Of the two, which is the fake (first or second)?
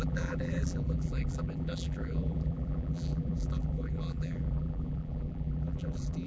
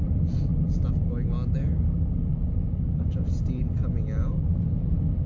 first